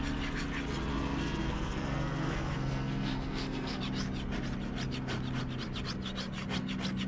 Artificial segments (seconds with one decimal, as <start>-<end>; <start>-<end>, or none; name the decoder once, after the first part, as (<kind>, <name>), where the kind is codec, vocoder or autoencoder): 0.9-3.8 (codec, SNAC)